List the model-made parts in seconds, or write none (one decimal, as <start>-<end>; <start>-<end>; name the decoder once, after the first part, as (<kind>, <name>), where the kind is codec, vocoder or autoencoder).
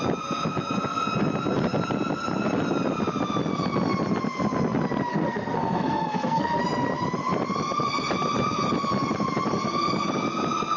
5.1-6.6 (codec, SNAC)